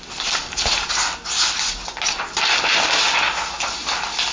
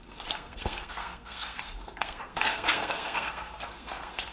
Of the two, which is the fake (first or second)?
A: second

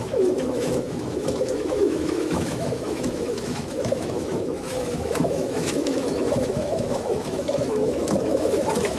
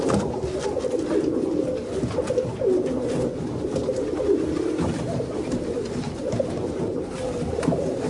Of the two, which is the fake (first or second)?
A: first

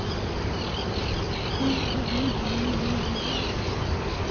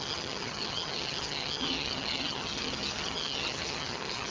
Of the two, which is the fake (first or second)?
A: second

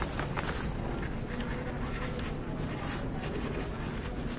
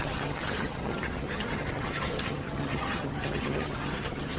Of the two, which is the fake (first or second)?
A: second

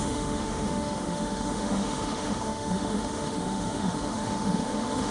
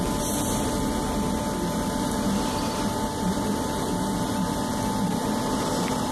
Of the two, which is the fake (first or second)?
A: first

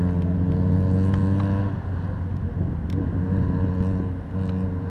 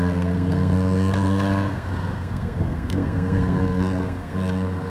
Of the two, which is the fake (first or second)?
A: second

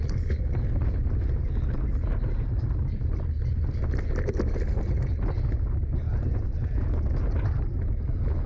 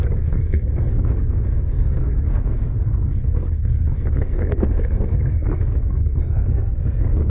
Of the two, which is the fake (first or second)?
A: second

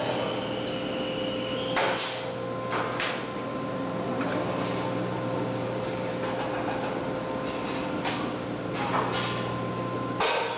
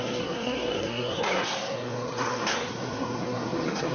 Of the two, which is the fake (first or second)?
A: second